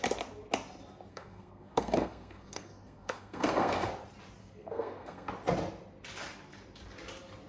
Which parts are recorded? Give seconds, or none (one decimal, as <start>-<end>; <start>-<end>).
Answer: 0.0-1.1; 3.9-4.4; 5.3-7.5